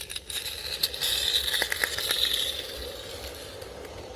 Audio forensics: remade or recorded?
recorded